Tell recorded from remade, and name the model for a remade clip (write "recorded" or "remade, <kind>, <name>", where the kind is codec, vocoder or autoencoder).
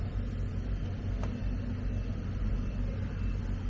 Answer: recorded